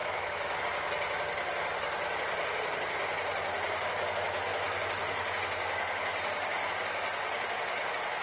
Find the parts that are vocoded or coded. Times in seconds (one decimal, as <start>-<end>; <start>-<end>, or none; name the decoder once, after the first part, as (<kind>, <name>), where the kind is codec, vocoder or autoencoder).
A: 0.0-0.6 (autoencoder, DAC-VAE)